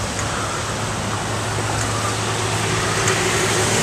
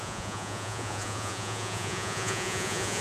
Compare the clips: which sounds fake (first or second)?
second